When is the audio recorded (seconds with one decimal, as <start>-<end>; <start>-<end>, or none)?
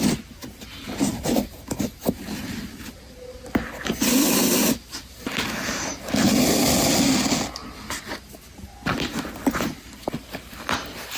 0.0-11.2